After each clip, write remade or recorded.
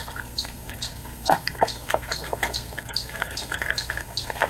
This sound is remade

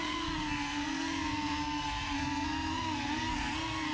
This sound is remade